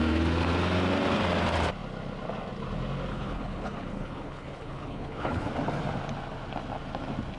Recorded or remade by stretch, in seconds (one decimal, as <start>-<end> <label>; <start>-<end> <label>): 0.0-3.1 recorded; 3.1-5.5 remade; 5.5-7.4 recorded